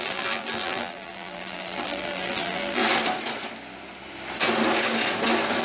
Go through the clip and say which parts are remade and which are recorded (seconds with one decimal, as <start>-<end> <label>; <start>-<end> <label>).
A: 0.0-2.8 remade; 2.8-5.6 recorded